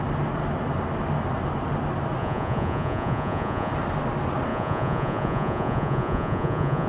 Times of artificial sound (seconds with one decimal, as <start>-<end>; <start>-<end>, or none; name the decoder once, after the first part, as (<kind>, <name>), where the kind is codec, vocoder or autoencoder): 2.2-3.7 (vocoder, Vocos); 4.5-6.9

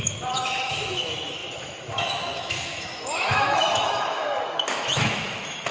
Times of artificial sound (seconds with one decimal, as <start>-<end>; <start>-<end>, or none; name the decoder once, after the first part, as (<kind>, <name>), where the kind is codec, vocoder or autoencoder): 0.0-5.7 (autoencoder, DAC-VAE)

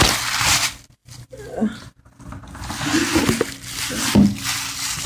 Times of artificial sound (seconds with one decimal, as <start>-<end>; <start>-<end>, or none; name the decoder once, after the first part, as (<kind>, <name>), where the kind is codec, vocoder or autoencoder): none

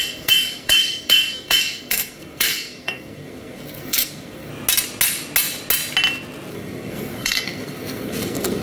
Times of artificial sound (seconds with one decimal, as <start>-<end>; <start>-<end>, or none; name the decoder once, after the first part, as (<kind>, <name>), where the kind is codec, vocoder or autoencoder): 0.0-4.5 (codec, SNAC); 6.5-8.6